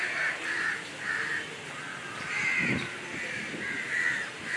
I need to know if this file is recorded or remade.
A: recorded